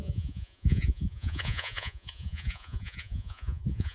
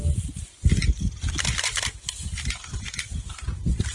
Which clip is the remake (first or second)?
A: first